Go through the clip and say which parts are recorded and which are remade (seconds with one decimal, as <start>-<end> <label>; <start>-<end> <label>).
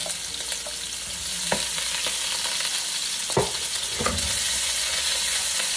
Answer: 0.0-3.4 recorded; 3.4-5.8 remade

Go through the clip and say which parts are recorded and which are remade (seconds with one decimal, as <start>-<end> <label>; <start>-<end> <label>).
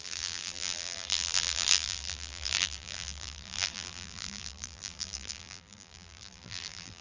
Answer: 0.0-7.0 remade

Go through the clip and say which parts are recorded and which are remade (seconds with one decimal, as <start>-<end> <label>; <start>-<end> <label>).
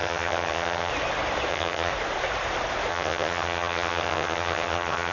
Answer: 0.0-0.9 remade; 0.9-1.5 recorded; 1.5-1.9 remade; 1.9-2.9 recorded; 2.9-5.1 remade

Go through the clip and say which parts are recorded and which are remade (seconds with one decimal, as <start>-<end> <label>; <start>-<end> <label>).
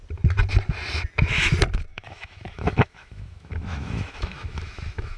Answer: 0.0-1.9 recorded; 1.9-5.2 remade